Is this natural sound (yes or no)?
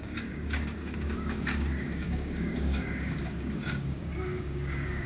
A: no